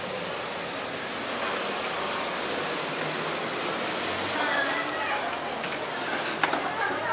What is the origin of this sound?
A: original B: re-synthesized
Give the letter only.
A